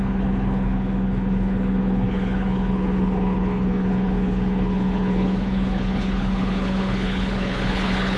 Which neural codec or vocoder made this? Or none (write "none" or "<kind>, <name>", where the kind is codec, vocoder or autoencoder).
codec, HILCodec